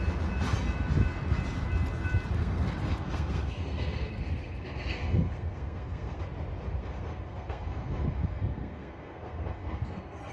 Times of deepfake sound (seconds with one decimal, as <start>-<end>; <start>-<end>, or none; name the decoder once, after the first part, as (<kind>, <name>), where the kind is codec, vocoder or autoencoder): 2.4-6.2 (codec, SNAC); 6.8-10.3